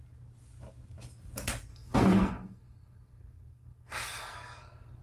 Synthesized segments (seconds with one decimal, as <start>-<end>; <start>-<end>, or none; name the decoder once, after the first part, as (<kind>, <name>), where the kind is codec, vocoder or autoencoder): 1.7-5.0 (codec, SNAC)